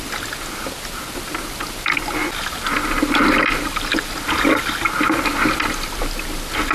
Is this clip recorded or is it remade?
recorded